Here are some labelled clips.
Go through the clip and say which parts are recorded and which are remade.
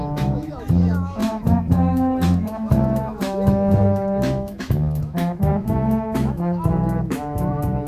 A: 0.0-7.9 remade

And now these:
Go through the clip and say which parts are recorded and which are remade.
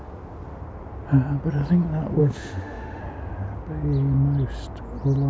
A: 0.0-2.2 recorded; 2.2-3.0 remade; 3.0-5.3 recorded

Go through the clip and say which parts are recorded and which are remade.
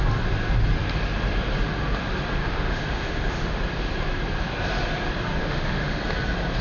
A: 0.0-2.4 recorded; 2.4-3.6 remade; 3.6-5.4 recorded; 5.4-6.0 remade; 6.0-6.6 recorded